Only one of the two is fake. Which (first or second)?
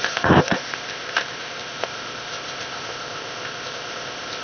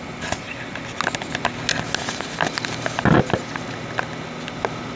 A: first